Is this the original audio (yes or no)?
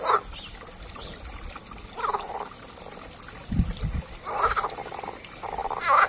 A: yes